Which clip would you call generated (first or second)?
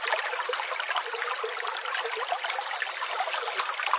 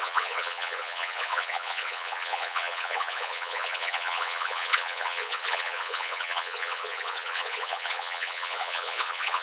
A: second